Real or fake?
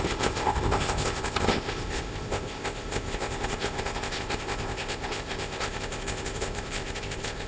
fake